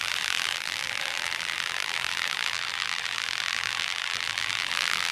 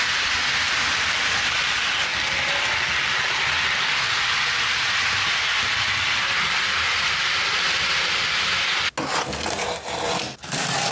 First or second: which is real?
second